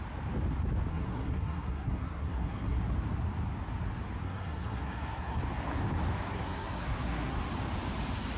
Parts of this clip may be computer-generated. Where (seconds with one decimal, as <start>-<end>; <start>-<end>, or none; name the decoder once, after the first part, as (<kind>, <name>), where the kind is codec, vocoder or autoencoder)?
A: 0.9-2.8 (codec, SNAC); 4.2-5.4; 6.3-7.3